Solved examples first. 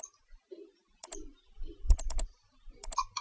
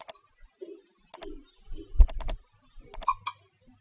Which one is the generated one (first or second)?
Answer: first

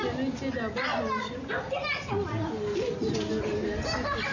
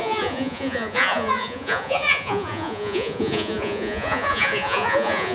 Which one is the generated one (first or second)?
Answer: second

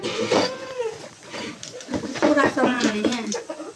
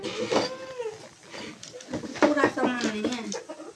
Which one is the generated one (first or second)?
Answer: first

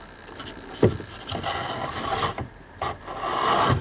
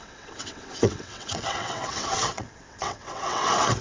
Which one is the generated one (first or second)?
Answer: second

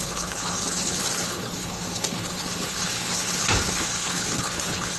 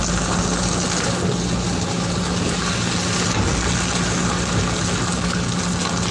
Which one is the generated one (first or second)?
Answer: first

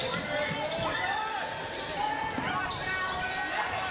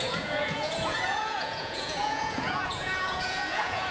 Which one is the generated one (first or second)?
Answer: second